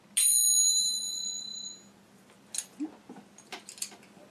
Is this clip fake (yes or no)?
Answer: no